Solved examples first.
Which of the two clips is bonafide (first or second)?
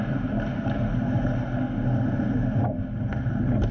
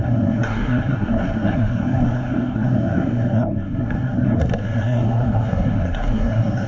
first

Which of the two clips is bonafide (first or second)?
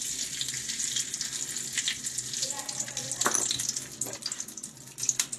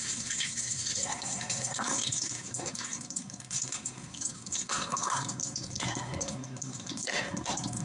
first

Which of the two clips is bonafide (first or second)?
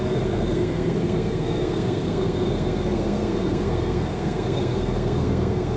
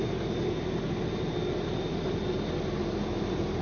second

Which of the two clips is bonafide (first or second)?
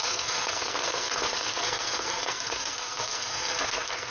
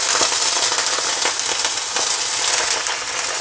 second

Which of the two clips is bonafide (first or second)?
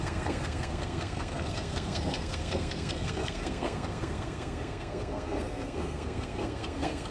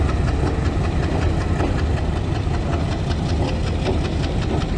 second